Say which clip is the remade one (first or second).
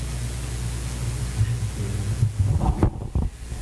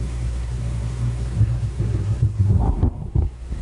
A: second